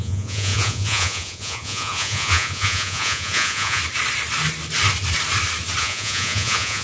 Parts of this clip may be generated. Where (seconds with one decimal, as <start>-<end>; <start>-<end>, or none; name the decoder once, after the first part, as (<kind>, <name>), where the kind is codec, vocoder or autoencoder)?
0.0-3.8 (vocoder, Vocos); 5.8-6.8